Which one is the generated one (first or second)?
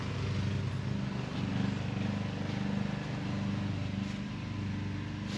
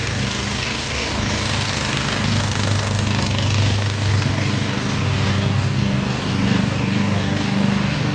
second